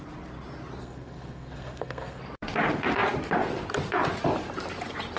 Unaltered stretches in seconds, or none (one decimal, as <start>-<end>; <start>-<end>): 0.0-0.8; 2.2-5.2